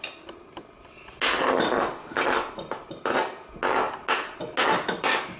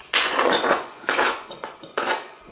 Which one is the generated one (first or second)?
second